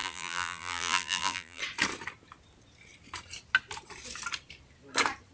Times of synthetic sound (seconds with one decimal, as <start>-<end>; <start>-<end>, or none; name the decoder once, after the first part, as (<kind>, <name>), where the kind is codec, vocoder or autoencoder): 0.0-1.6 (vocoder, BigVGAN v2)